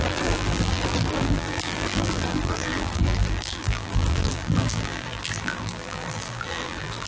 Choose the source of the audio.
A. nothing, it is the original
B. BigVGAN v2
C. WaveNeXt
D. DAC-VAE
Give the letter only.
B